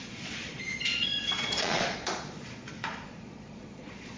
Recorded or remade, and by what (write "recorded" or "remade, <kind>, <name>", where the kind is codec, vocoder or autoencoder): remade, vocoder, Vocos